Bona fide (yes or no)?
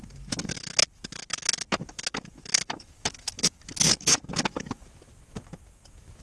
no